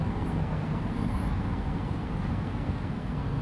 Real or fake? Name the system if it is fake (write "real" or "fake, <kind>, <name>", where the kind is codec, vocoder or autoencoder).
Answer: fake, codec, SNAC